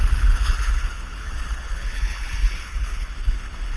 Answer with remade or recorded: remade